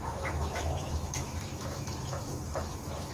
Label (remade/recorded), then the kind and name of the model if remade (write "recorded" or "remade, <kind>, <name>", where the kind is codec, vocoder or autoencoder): remade, autoencoder, DAC-VAE